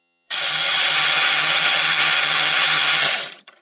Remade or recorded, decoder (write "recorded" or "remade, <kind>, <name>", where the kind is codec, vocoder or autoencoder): remade, vocoder, HiFi-GAN